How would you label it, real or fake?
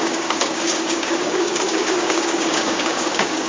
fake